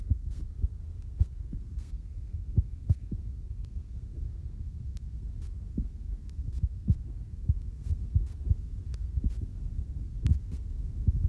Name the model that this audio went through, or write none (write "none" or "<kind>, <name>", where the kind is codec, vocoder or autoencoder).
codec, SNAC